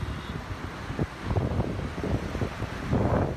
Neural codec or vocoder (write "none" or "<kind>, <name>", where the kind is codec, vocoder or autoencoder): none